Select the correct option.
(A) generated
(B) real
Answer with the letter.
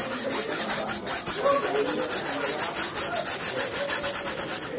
B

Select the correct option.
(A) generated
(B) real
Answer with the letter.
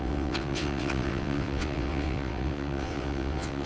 A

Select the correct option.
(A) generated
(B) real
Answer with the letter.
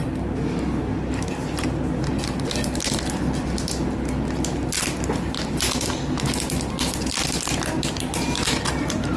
B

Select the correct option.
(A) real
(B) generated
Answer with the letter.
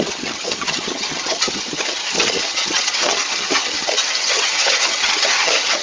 B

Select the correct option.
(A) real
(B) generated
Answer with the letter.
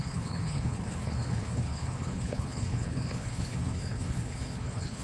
B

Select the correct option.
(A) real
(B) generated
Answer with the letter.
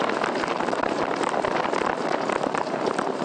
A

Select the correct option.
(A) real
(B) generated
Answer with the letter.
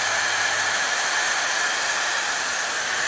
A